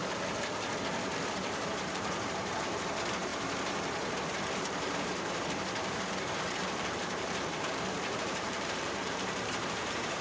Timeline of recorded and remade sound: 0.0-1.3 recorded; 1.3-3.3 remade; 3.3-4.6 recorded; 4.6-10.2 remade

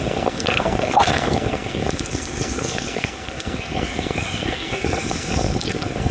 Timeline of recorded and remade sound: 0.0-6.1 remade

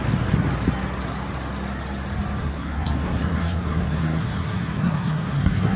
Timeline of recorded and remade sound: 0.0-2.4 recorded; 2.4-5.8 remade

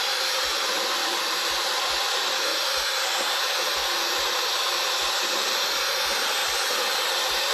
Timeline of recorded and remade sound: 0.0-1.0 recorded; 1.0-2.1 remade; 2.1-2.5 recorded; 2.5-3.1 remade; 3.1-3.8 recorded; 3.8-5.0 remade; 5.0-7.5 recorded

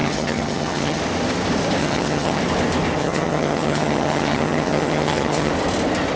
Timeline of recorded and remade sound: 0.0-1.0 remade; 1.0-1.8 recorded; 1.8-2.4 remade; 2.4-3.0 recorded; 3.0-5.5 remade; 5.5-6.2 recorded

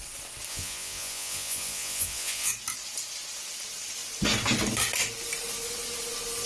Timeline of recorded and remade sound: 0.0-0.5 recorded; 0.5-2.5 remade; 2.5-6.5 recorded